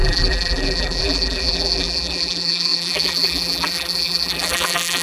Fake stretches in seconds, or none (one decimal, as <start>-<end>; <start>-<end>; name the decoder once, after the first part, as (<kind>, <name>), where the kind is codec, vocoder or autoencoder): 0.0-5.0 (vocoder, BigVGAN v2)

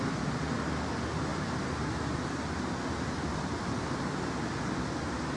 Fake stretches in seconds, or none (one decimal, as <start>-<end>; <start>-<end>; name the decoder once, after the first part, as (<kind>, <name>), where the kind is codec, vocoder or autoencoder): 3.3-4.8 (vocoder, BigVGAN v2)

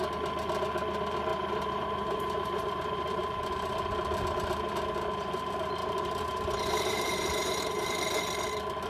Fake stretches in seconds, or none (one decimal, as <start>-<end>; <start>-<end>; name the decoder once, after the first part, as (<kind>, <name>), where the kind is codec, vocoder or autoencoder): 1.3-3.8 (vocoder, BigVGAN v2); 5.8-8.0

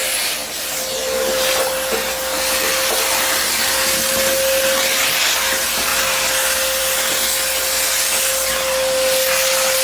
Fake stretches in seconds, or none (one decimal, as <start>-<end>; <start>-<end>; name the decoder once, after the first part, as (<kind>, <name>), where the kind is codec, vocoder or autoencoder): none

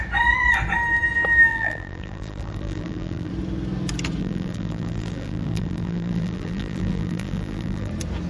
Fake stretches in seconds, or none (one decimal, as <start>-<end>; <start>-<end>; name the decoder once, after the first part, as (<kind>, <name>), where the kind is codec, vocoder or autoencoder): 1.5-3.3 (vocoder, BigVGAN v2); 4.2-7.9